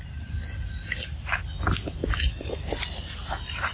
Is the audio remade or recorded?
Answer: recorded